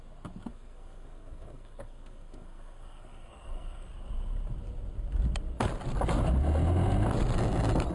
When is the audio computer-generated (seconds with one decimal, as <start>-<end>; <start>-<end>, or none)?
0.5-3.9